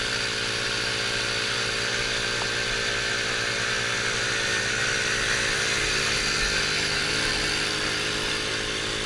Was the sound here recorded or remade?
recorded